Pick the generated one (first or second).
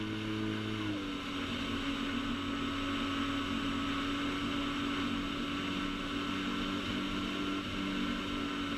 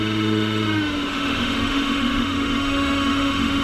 second